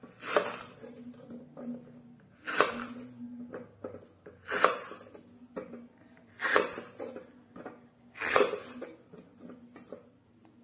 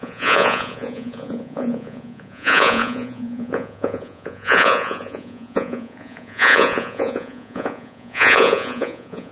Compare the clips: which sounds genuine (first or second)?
first